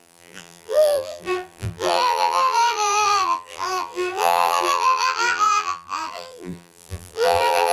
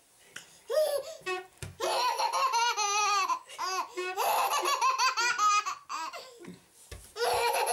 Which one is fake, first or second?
first